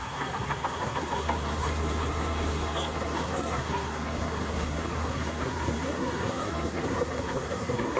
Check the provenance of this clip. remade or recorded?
remade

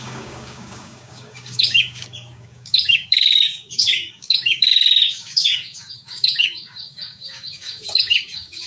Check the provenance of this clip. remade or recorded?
remade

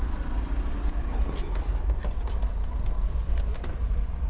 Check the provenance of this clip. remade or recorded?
recorded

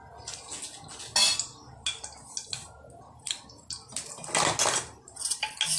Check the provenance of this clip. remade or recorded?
recorded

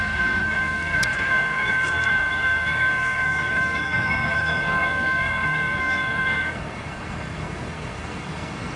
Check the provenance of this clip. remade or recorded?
remade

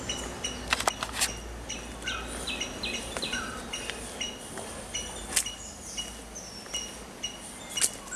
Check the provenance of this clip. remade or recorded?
recorded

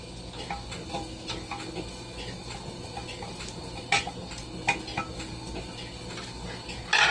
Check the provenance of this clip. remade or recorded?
recorded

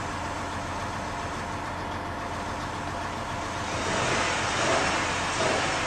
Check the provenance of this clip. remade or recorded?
recorded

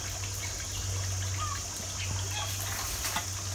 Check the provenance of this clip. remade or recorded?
recorded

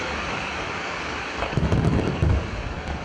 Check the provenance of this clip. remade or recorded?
remade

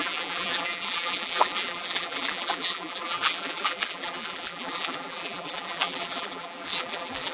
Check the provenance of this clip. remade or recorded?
remade